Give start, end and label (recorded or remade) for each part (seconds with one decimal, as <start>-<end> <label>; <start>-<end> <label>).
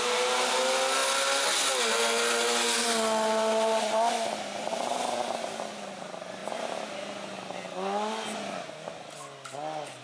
0.0-10.0 recorded